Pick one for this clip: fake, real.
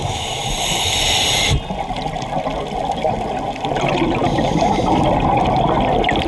real